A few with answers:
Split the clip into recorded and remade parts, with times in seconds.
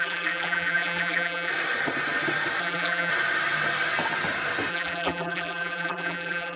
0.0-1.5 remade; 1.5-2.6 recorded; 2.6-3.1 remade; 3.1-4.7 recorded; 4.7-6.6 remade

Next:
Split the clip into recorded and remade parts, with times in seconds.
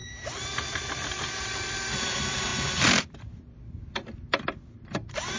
0.0-2.5 remade; 2.5-3.0 recorded; 3.0-5.4 remade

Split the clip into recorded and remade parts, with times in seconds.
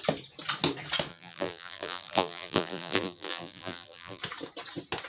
0.0-1.1 recorded; 1.1-4.2 remade; 4.2-5.1 recorded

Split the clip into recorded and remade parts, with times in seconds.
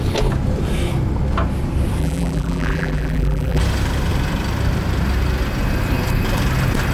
0.0-2.0 recorded; 2.0-3.6 remade; 3.6-6.9 recorded